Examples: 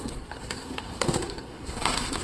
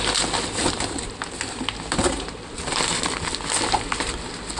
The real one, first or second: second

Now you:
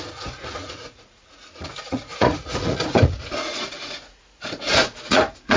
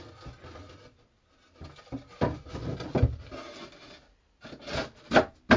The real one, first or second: second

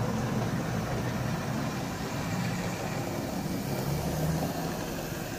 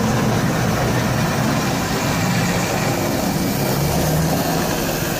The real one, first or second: second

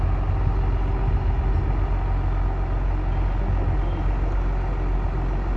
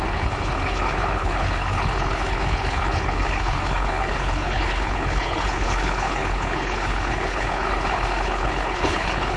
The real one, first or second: first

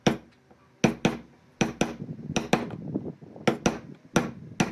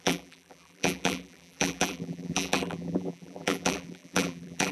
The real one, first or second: first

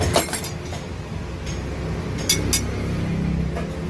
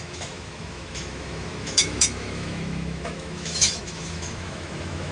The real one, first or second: first